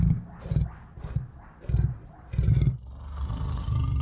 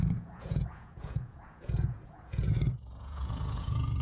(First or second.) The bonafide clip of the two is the first